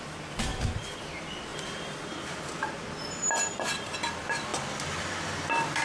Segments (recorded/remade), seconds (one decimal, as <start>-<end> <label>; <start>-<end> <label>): 0.0-0.5 remade; 0.5-1.0 recorded; 1.0-4.5 remade; 4.5-5.0 recorded; 5.0-5.8 remade